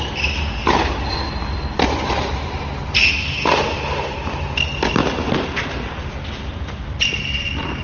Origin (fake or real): real